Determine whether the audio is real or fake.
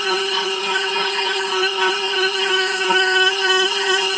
fake